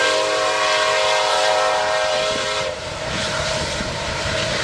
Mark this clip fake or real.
fake